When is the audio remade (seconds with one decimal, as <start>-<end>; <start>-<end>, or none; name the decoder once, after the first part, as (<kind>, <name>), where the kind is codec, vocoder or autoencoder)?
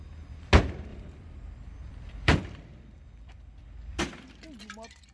0.9-4.0 (vocoder, BigVGAN v2)